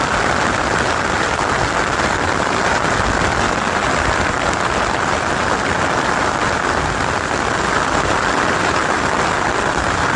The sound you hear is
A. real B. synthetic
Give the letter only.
A